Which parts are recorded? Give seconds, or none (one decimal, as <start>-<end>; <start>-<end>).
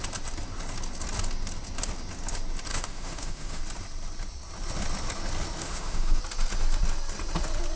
0.0-2.7; 3.6-5.6; 6.2-7.8